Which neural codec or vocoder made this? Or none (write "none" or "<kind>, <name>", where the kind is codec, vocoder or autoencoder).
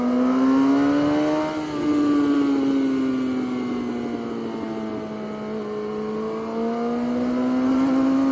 none